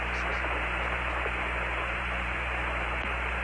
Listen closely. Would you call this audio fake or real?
fake